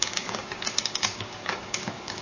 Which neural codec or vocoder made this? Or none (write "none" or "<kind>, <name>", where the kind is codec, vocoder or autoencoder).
codec, DAC